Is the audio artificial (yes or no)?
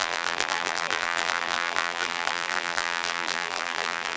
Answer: yes